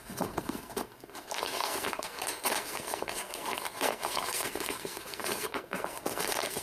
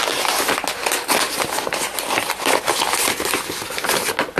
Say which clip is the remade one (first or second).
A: first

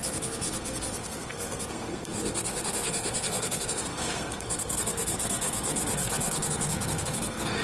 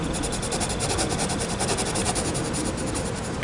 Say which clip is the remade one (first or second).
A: first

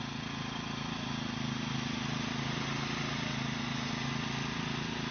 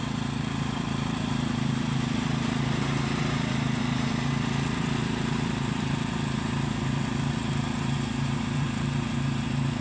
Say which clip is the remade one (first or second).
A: second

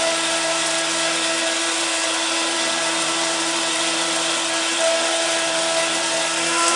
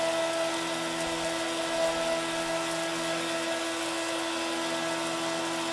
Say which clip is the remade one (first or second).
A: first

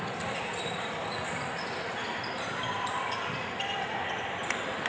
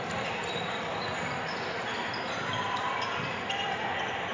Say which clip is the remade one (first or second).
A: first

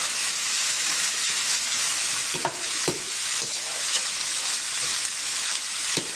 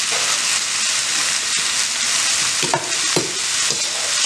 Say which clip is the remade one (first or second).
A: first